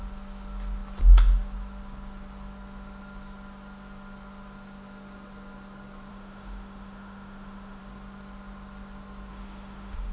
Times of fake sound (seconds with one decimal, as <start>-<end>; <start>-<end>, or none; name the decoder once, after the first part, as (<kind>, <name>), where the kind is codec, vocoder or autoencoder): 6.1-7.8 (autoencoder, DAC-VAE); 9.3-10.1